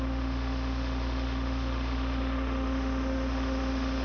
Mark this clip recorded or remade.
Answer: remade